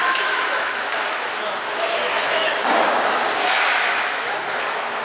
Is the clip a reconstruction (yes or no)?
yes